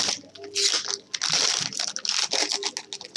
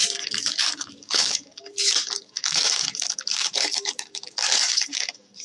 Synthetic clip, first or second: second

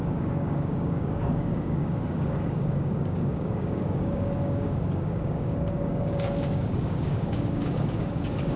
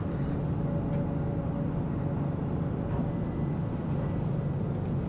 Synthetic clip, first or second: first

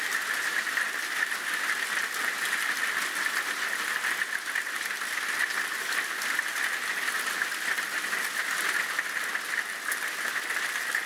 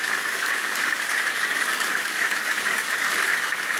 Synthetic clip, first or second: second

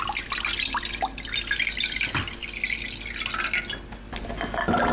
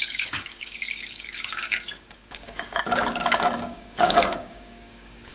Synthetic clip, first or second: second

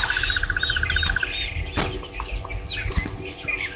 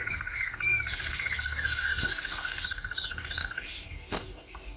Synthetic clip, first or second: second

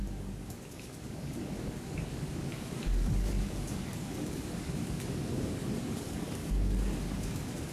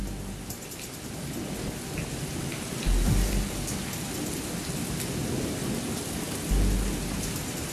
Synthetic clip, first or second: first